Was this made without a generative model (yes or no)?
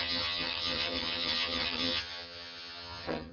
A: no